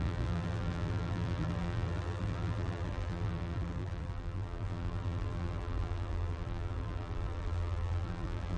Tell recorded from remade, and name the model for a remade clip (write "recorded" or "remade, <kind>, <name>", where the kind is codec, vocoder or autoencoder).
remade, vocoder, BigVGAN v2